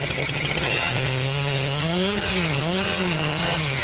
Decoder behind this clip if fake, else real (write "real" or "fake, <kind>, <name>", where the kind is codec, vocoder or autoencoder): fake, vocoder, HiFi-GAN